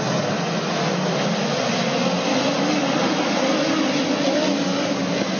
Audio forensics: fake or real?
real